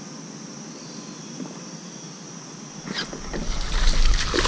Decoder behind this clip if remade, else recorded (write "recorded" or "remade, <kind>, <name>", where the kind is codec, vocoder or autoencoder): recorded